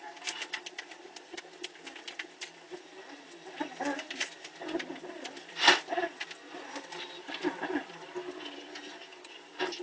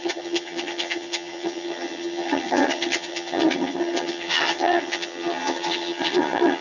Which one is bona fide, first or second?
first